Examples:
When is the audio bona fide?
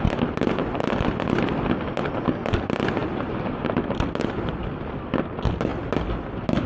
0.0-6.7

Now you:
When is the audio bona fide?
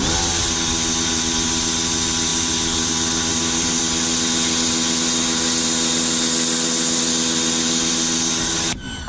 0.0-2.3; 2.9-3.3; 3.8-9.1